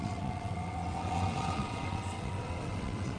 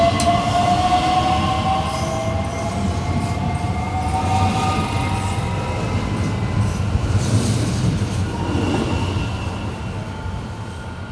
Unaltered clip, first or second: second